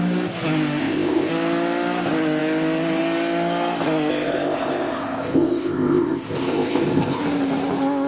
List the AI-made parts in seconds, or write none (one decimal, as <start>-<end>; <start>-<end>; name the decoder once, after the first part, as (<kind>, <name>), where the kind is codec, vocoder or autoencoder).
0.8-1.3 (codec, ZipCodec); 4.1-7.2